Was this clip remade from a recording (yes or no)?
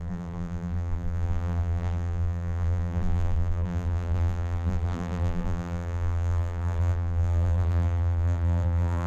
yes